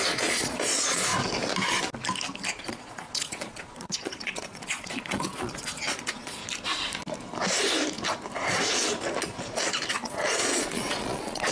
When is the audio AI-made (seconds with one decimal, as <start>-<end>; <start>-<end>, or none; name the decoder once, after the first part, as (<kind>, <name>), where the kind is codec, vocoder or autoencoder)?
0.0-1.1 (vocoder, Vocos); 2.6-6.4; 9.9-11.5